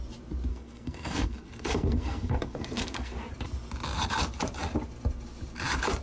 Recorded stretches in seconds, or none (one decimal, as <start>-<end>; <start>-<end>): 0.0-0.5; 3.3-6.0